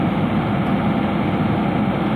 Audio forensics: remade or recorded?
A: recorded